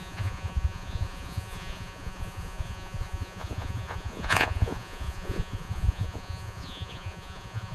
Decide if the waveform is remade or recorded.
remade